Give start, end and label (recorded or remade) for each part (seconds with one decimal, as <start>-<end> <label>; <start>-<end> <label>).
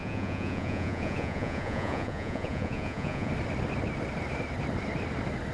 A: 0.0-3.3 remade; 3.3-5.5 recorded